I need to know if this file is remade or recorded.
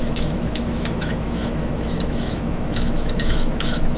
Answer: remade